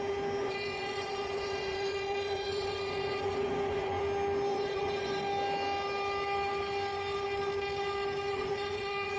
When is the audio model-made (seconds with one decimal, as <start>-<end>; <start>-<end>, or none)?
0.4-4.0; 4.5-5.2; 8.3-9.2